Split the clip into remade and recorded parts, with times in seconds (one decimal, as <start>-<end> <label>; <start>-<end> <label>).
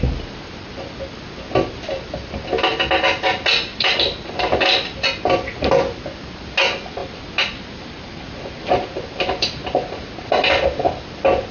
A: 0.0-3.7 recorded; 3.7-4.3 remade; 4.3-7.0 recorded; 7.0-10.1 remade; 10.1-11.5 recorded